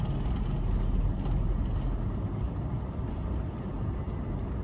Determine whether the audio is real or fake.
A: real